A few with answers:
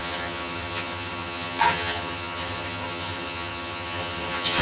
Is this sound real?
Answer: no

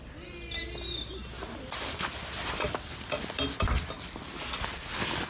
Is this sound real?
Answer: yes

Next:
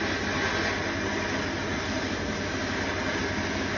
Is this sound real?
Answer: yes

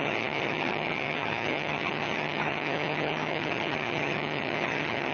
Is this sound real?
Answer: no